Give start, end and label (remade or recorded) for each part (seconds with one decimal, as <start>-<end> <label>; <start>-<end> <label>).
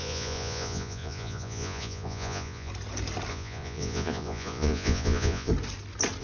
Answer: 0.0-2.7 remade; 2.7-3.3 recorded; 3.3-5.5 remade; 5.5-6.2 recorded